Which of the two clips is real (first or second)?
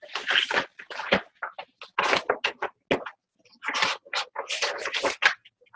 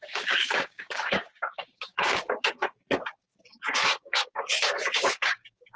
first